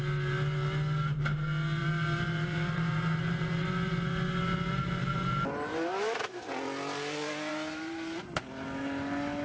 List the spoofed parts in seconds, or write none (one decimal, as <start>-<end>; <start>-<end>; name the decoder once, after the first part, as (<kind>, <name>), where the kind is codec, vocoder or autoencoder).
1.8-6.5 (vocoder, BigVGAN v2); 7.5-8.2